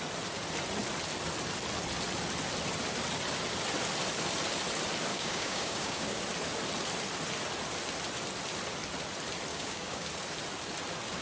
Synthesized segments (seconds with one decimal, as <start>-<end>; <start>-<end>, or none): 5.1-6.2; 9.5-10.1